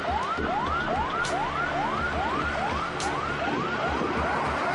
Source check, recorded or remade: recorded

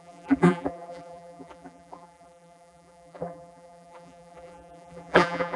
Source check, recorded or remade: remade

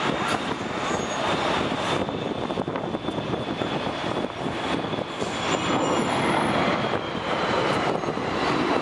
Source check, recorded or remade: recorded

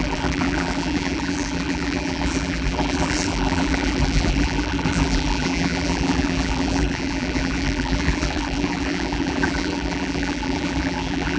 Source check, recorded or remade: remade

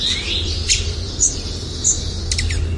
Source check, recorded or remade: recorded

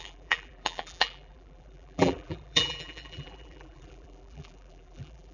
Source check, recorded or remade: remade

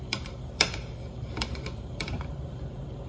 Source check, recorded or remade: remade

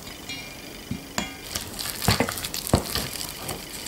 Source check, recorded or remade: recorded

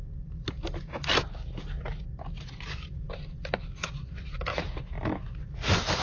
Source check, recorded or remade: recorded